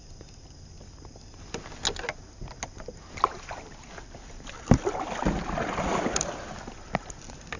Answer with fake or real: real